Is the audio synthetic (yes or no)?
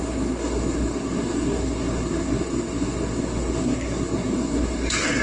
yes